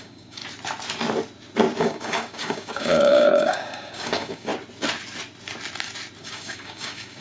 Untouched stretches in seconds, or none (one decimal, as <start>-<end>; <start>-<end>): 0.4-1.8; 4.5-6.2